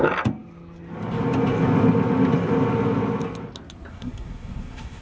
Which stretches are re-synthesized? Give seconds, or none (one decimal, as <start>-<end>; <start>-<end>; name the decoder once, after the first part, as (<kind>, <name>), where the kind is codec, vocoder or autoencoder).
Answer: 3.9-5.0 (codec, SNAC)